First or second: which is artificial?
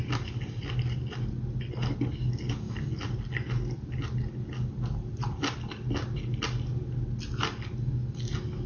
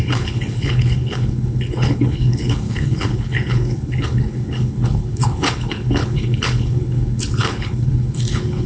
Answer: second